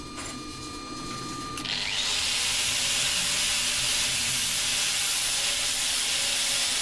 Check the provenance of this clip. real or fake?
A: real